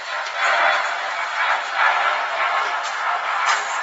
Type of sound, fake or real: real